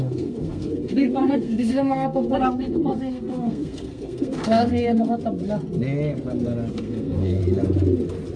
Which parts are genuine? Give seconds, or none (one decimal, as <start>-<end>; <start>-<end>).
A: 5.2-6.7; 7.4-8.4